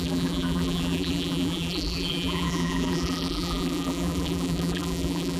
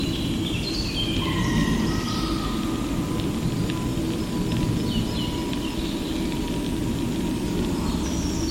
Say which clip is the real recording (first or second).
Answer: second